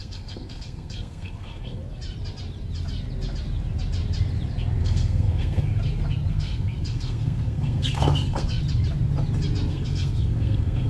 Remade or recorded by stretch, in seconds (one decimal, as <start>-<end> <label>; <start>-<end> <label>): 0.0-1.8 remade; 1.8-4.8 recorded; 4.8-5.7 remade; 5.7-6.3 recorded; 6.3-8.6 remade; 8.6-9.7 recorded; 9.7-10.9 remade